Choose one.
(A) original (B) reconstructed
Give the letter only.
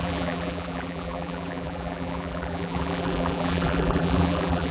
B